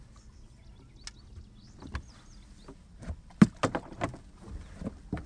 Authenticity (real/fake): real